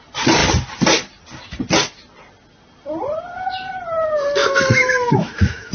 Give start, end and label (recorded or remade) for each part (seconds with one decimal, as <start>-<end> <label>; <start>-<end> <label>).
0.0-4.4 recorded; 4.4-5.7 remade